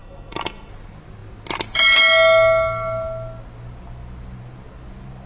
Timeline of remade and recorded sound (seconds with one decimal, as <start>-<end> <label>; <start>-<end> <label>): 0.0-0.7 remade; 0.7-5.3 recorded